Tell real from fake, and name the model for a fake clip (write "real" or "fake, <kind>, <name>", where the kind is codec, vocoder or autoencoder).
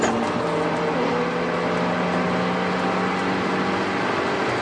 real